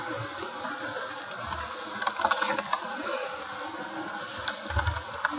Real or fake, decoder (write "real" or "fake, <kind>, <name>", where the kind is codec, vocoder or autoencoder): real